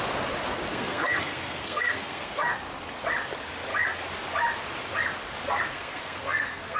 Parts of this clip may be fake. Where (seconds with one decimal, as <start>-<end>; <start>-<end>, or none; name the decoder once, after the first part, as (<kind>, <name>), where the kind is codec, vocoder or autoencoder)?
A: 0.7-2.5 (codec, SNAC); 5.7-6.8